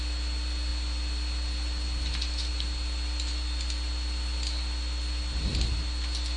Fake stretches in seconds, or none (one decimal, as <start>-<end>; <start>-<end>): none